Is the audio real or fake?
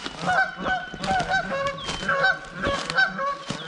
real